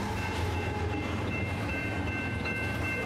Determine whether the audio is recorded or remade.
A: remade